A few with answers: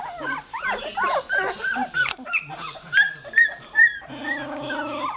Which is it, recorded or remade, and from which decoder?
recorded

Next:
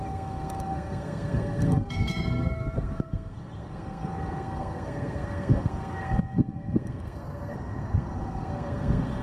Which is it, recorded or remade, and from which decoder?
remade, codec, SNAC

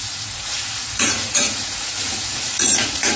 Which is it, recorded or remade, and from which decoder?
remade, vocoder, Vocos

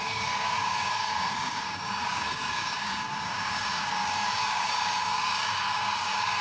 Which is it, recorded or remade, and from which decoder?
remade, codec, DAC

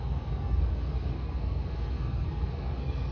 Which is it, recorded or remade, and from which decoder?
remade, codec, SNAC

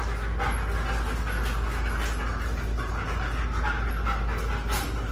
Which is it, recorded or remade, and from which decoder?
recorded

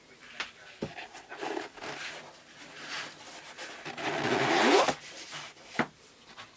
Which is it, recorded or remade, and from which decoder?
recorded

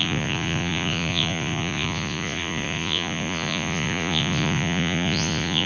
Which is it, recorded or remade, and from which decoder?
remade, vocoder, Vocos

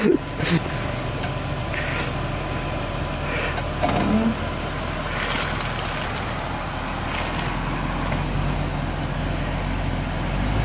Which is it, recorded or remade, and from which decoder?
recorded